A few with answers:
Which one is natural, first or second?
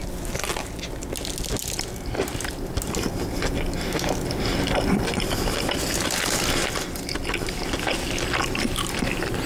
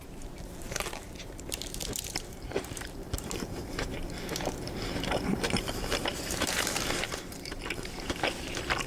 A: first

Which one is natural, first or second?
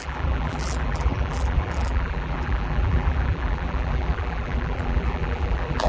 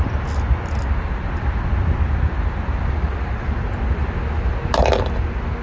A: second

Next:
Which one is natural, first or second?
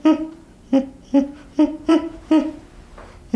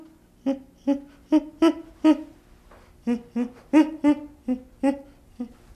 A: second